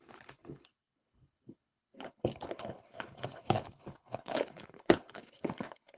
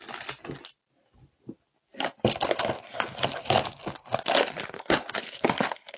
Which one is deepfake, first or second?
first